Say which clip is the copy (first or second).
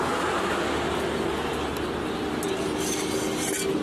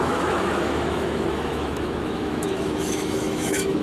second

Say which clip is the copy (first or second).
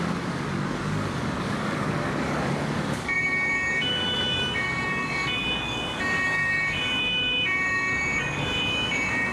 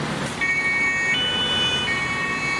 first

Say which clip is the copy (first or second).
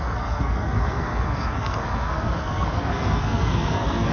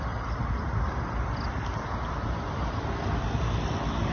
first